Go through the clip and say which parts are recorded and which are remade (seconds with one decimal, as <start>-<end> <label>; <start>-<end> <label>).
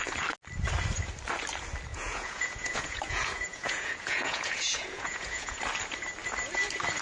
0.0-1.9 recorded; 1.9-5.6 remade; 5.6-7.0 recorded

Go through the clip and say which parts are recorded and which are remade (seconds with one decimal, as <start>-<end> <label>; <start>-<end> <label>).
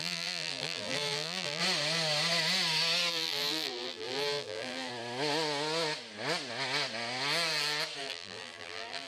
0.0-1.6 remade; 1.6-3.1 recorded; 3.1-4.9 remade; 4.9-8.0 recorded; 8.0-9.1 remade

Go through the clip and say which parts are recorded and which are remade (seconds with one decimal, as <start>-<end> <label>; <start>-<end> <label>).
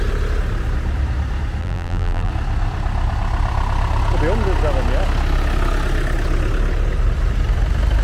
0.0-1.6 recorded; 1.6-2.3 remade; 2.3-8.0 recorded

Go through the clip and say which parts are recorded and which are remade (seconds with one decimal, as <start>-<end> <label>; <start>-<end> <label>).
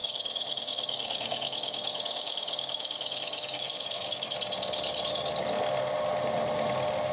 0.0-4.3 remade; 4.3-7.1 recorded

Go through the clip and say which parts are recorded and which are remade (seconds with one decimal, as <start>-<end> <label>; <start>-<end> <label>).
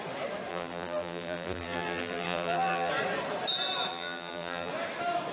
0.0-0.5 recorded; 0.5-2.9 remade; 2.9-3.9 recorded; 3.9-4.7 remade; 4.7-5.3 recorded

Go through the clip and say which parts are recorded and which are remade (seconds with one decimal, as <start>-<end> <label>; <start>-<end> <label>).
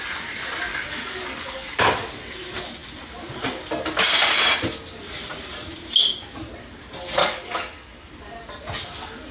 0.0-0.7 recorded; 0.7-1.9 remade; 1.9-7.2 recorded; 7.2-8.2 remade; 8.2-9.3 recorded